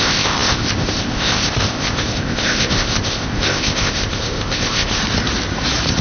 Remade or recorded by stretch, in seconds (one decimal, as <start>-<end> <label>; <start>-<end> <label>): 0.0-5.0 remade; 5.0-6.0 recorded